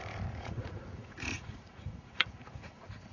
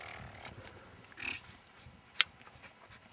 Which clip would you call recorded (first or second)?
second